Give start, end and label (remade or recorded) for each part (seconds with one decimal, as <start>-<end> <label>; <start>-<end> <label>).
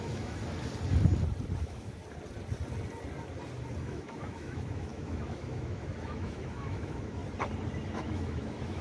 0.0-0.4 remade; 0.4-1.6 recorded; 1.6-2.0 remade; 2.0-3.8 recorded; 3.8-7.2 remade; 7.2-7.9 recorded; 7.9-8.8 remade